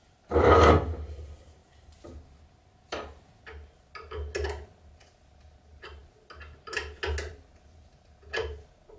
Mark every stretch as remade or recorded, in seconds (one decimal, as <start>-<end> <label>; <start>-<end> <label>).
0.0-9.0 recorded